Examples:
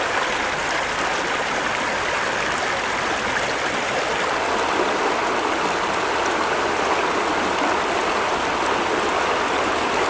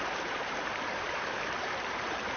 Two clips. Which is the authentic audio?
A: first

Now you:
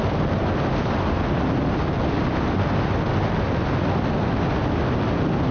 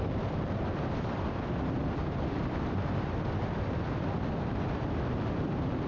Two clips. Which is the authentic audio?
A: first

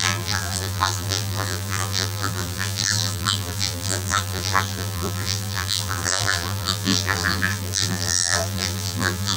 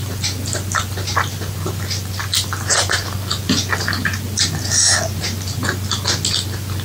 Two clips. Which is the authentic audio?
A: second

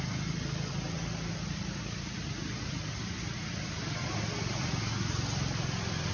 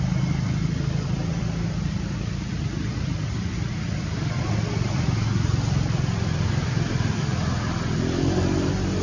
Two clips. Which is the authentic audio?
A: first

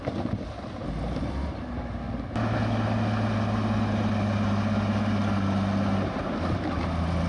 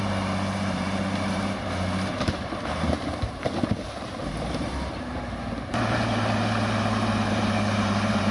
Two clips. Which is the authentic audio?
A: first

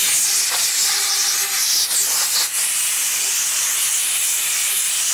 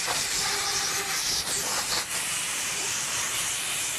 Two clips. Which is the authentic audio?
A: first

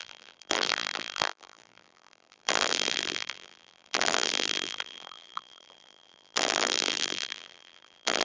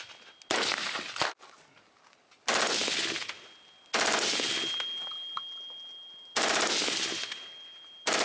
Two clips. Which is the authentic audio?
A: second